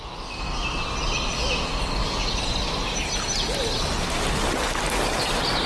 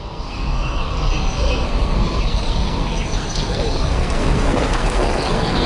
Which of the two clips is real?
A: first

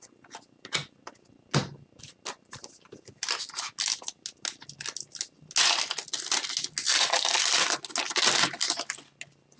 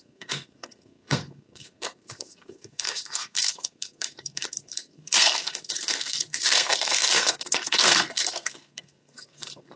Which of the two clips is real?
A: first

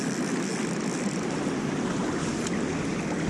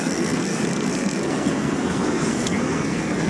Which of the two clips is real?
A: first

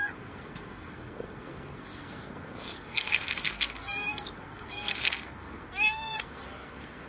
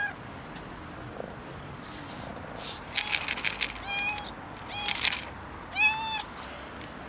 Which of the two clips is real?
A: second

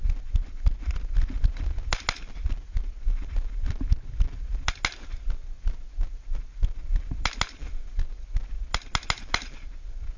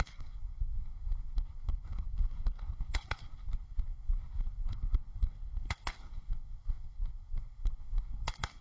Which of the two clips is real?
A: first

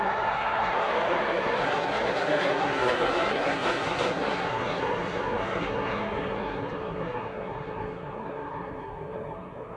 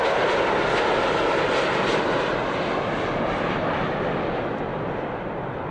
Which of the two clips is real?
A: second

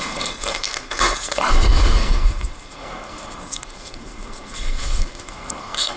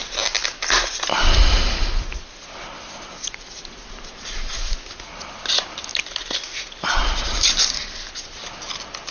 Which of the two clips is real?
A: second